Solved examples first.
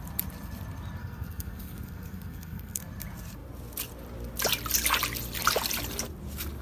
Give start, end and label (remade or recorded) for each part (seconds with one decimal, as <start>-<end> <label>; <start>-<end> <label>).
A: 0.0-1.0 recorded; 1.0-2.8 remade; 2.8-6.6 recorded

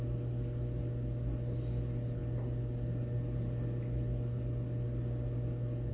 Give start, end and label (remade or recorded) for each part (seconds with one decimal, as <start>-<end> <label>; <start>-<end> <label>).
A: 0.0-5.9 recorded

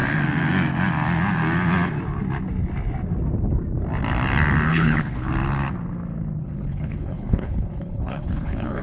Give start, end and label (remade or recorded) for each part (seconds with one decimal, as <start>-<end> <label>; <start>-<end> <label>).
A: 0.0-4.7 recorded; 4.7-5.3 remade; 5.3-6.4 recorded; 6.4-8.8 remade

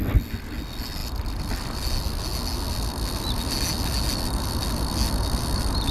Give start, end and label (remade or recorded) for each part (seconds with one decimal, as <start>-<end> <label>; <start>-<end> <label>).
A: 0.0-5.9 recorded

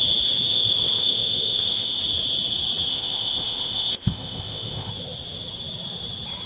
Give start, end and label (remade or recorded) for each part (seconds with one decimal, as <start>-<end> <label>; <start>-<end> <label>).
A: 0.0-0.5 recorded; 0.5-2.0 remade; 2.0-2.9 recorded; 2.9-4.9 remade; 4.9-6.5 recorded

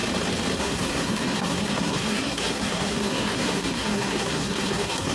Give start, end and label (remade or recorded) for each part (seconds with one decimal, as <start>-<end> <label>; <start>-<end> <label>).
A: 0.0-0.6 recorded; 0.6-5.1 remade

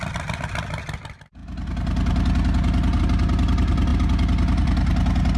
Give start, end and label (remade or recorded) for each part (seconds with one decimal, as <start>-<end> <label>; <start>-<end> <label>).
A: 0.0-5.4 recorded